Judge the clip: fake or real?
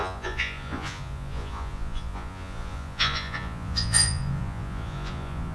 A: fake